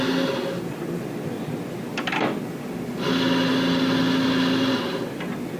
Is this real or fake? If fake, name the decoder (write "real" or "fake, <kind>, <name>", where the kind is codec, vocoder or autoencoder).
real